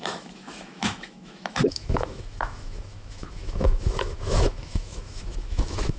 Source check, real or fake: fake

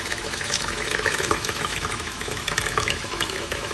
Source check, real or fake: fake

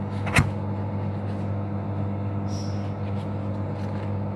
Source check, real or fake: real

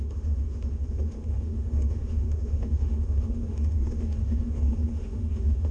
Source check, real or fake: fake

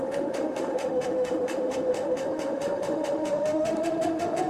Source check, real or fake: fake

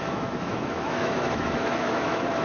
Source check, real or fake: fake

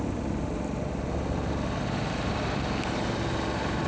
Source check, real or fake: real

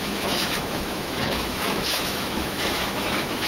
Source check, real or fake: fake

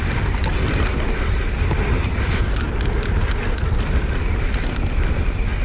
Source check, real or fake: real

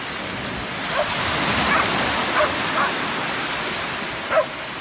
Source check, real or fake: real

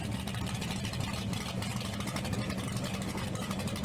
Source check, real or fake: real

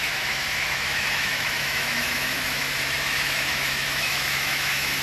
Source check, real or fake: fake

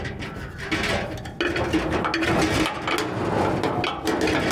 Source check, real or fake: real